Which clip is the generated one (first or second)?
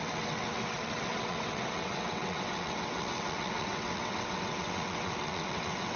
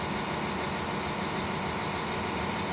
first